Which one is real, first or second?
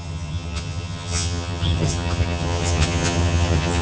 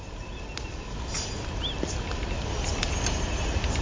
second